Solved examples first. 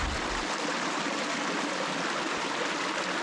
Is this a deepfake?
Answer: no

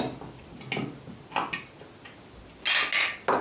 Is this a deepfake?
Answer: no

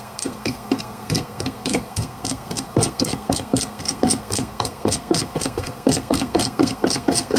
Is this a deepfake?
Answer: yes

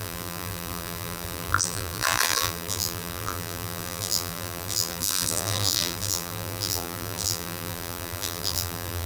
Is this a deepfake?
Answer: yes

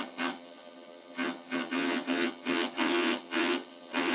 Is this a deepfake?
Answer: yes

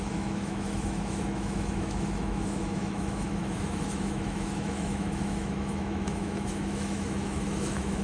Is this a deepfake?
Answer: yes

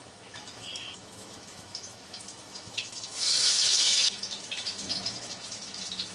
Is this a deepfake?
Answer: yes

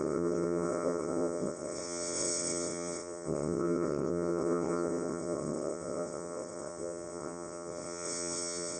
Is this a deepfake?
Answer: yes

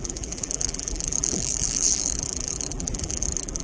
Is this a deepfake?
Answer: yes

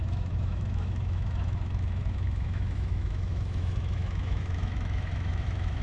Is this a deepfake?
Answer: yes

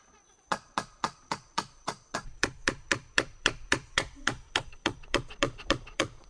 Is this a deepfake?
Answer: yes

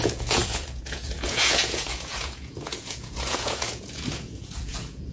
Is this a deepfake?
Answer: yes